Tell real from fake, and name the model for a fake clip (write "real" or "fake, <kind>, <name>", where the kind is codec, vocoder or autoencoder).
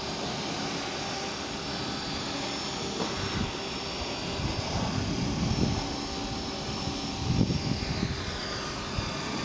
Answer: real